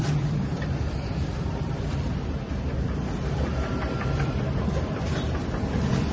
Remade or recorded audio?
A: remade